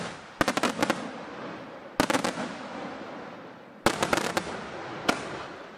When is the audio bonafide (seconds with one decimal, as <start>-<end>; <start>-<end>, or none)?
0.0-5.8